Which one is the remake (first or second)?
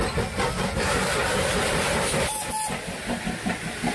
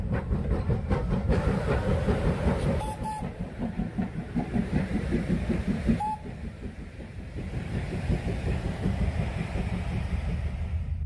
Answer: second